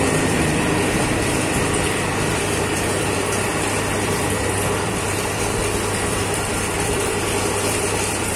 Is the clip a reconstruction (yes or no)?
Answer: yes